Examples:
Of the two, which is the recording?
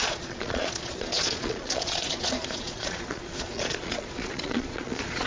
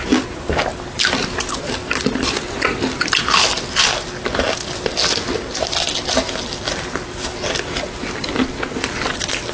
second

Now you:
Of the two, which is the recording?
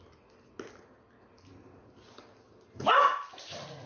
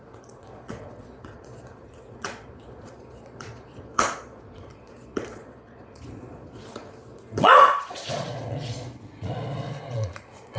first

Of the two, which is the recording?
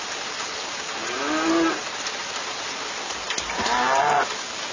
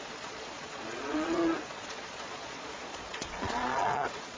first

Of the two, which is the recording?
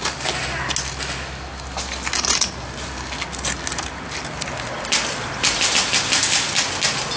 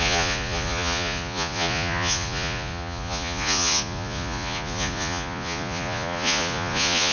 first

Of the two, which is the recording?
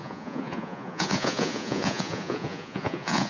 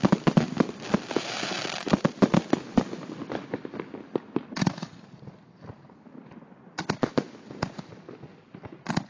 second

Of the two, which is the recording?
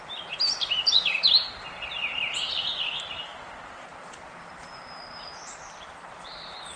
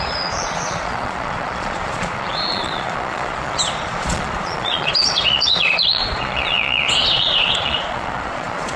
first